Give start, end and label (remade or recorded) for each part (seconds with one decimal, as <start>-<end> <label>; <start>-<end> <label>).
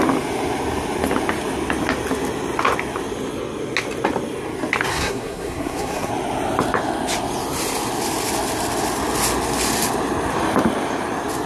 0.0-4.9 recorded; 4.9-6.1 remade; 6.1-11.5 recorded